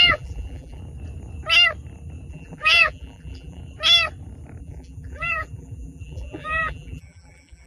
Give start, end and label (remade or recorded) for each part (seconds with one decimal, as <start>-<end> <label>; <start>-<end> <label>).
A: 0.0-0.8 remade; 0.8-2.3 recorded; 2.3-3.6 remade; 3.6-4.6 recorded; 4.6-7.7 remade